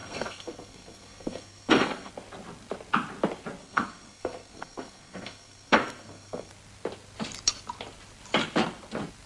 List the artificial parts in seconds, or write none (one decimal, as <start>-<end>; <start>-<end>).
0.0-2.1; 3.6-6.5